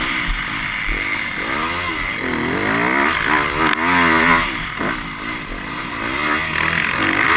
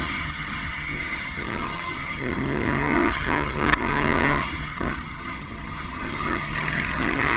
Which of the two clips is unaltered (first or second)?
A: first